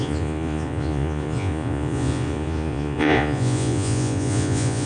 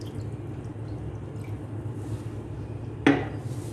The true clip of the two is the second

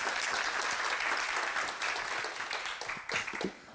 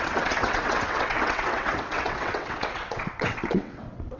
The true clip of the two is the first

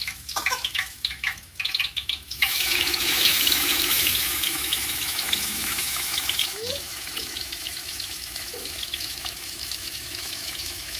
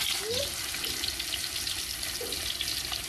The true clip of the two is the second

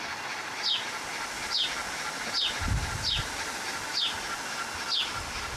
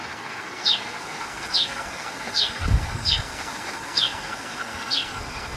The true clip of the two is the first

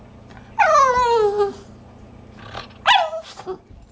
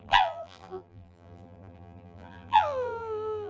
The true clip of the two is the first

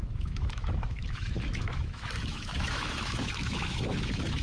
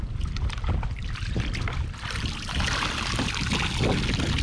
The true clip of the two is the second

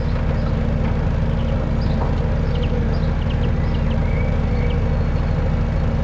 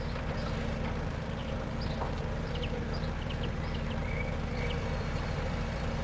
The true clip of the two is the first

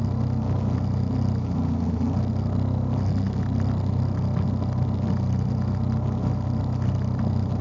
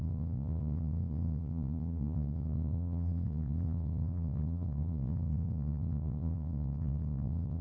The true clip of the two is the first